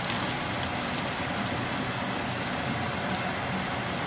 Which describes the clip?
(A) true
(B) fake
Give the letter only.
A